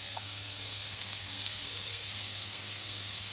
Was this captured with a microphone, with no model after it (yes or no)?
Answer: no